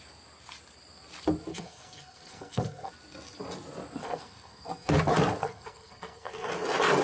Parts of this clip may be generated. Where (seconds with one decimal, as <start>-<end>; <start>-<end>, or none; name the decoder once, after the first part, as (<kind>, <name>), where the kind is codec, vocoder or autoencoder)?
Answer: 1.5-2.9 (codec, SNAC); 4.0-4.9; 5.4-6.5